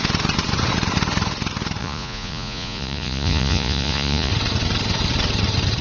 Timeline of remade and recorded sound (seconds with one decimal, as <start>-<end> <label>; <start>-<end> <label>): 0.0-1.8 recorded; 1.8-4.3 remade; 4.3-5.8 recorded